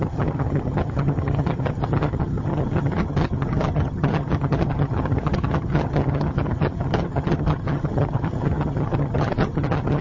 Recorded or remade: remade